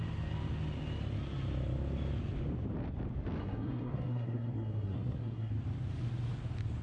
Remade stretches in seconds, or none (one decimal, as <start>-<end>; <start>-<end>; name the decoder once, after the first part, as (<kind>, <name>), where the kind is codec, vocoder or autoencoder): 3.4-5.5 (codec, SNAC)